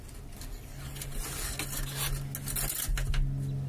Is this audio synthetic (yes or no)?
no